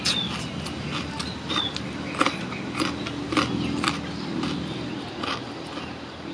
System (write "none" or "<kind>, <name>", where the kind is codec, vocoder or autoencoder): none